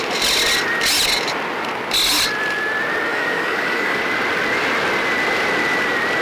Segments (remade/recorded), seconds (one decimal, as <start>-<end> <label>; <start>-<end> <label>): 0.0-3.1 recorded; 3.1-4.0 remade; 4.0-6.2 recorded

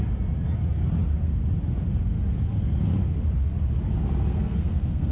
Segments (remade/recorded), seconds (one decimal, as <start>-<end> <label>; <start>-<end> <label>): 0.0-4.3 recorded; 4.3-5.1 remade

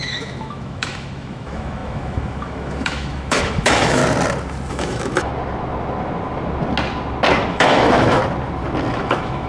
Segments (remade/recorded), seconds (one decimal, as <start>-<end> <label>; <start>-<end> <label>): 0.0-4.0 remade; 4.0-4.7 recorded; 4.7-5.3 remade; 5.3-7.5 recorded; 7.5-8.2 remade; 8.2-8.9 recorded; 8.9-9.5 remade

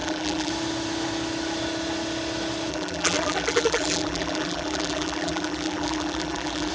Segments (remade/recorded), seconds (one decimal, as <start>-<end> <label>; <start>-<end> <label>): 0.0-0.5 remade; 0.5-2.7 recorded; 2.7-6.7 remade

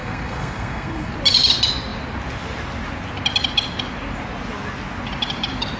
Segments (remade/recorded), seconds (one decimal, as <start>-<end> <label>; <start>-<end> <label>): 0.0-1.1 remade; 1.1-5.8 recorded